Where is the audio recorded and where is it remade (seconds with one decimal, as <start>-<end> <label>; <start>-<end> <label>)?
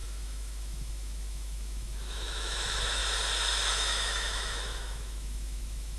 0.0-3.0 remade; 3.0-3.7 recorded; 3.7-6.0 remade